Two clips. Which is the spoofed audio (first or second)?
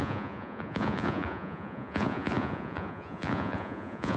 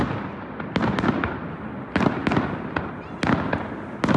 first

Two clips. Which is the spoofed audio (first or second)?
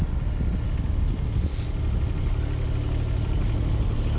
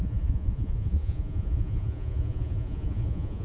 second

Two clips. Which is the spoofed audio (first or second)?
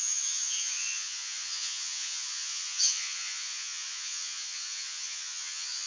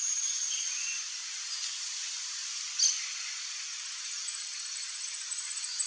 first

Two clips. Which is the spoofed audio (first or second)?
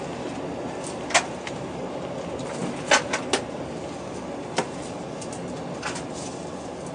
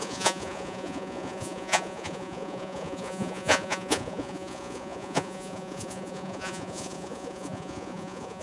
second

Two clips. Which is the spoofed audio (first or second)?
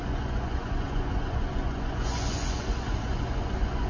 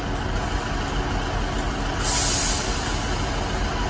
first